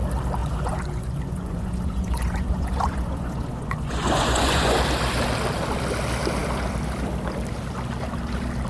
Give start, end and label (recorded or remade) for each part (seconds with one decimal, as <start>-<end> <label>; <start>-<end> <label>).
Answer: 0.0-0.4 recorded; 0.4-4.8 remade; 4.8-8.7 recorded